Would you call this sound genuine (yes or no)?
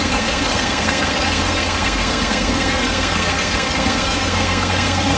no